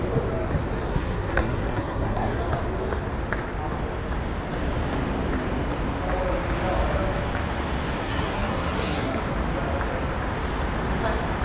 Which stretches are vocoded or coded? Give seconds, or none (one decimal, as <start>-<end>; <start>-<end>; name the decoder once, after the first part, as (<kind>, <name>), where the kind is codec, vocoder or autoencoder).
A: 0.9-2.4 (codec, SNAC); 8.0-9.2